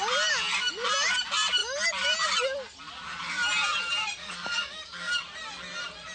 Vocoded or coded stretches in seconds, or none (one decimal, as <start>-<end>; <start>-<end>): 4.2-5.1